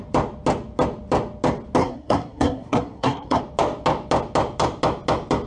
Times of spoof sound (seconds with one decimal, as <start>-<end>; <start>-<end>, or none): 1.8-3.4